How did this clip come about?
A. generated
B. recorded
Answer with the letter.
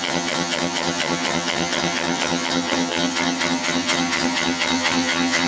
A